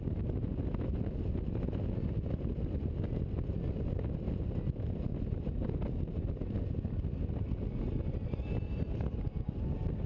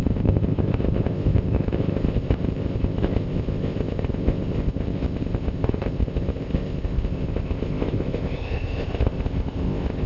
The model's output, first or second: second